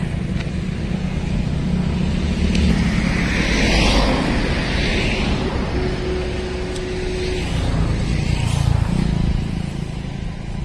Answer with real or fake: real